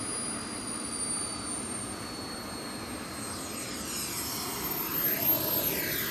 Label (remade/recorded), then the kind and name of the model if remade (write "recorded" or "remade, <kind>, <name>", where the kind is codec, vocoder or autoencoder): recorded